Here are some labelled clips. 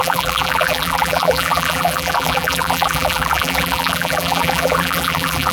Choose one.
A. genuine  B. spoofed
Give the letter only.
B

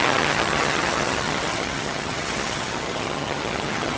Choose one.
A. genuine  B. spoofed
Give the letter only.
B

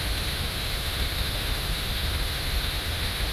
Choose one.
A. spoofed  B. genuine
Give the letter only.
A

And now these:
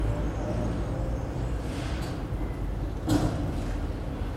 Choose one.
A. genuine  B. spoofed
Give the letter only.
A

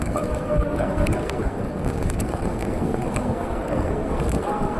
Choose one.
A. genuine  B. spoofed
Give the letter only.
B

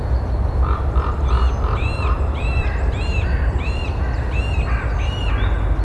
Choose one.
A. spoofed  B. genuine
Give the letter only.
B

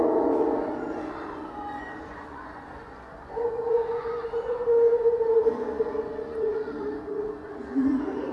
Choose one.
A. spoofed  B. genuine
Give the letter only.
A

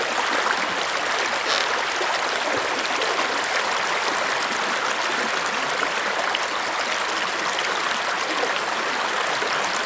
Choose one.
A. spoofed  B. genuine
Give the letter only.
B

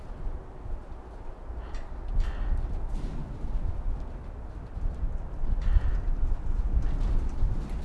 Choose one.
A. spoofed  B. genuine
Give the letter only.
B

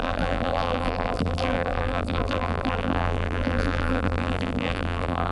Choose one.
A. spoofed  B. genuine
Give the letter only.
A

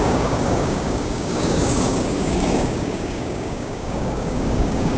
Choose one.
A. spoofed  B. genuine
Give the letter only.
A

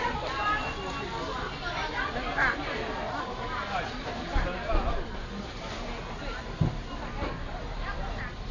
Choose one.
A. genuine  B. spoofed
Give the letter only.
A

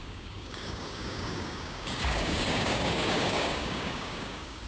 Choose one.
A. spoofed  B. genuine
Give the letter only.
A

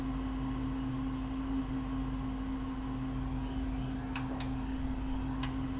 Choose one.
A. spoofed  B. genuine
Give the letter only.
B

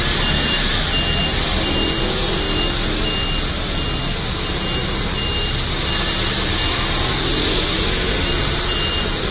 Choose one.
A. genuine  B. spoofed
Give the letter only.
A